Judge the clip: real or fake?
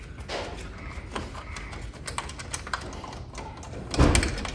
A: real